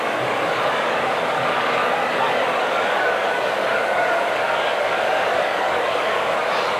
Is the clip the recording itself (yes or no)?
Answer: no